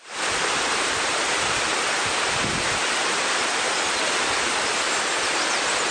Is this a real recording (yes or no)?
yes